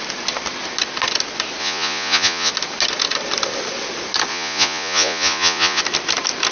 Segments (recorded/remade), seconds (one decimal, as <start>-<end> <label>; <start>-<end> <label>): 0.0-1.6 recorded; 1.6-2.5 remade; 2.5-4.3 recorded; 4.3-5.8 remade; 5.8-6.5 recorded